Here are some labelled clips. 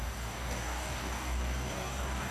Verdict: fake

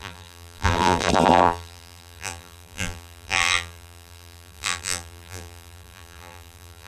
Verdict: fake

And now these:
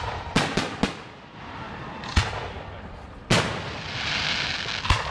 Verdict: real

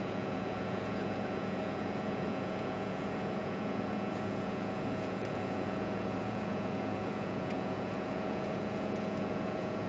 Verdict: fake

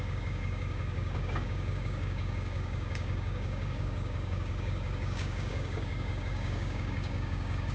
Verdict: fake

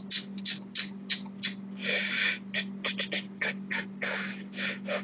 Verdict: real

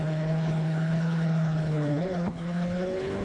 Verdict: fake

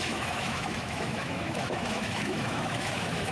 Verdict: fake